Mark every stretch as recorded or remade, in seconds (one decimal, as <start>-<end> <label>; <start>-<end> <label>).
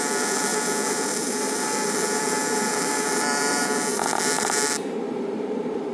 0.0-5.9 remade